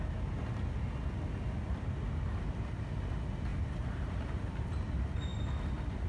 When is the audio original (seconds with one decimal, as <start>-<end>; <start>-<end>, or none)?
0.0-3.5; 4.8-6.1